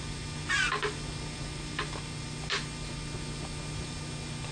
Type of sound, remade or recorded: recorded